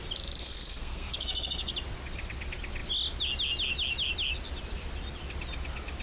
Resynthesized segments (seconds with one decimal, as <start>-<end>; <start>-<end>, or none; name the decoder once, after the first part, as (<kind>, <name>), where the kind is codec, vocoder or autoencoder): 0.4-1.7 (codec, SNAC)